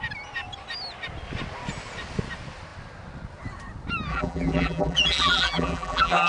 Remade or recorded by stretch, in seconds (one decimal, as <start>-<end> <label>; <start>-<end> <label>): 0.0-4.1 recorded; 4.1-6.3 remade